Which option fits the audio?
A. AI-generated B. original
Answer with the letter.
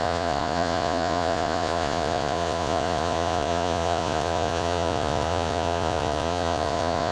A